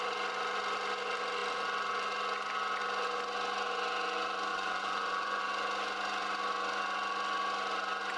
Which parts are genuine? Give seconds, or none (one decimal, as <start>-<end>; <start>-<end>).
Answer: 0.0-4.5; 5.4-8.2